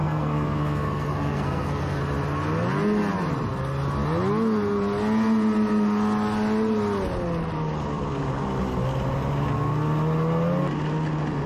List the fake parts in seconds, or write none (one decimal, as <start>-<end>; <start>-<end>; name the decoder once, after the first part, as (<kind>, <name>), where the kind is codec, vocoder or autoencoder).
0.0-2.0 (codec, SNAC)